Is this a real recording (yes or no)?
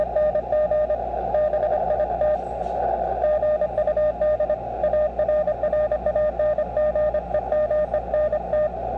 yes